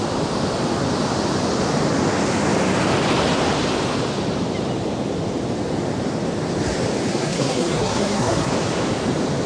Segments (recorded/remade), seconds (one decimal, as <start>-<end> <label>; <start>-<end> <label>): 0.0-7.1 recorded; 7.1-8.5 remade; 8.5-9.5 recorded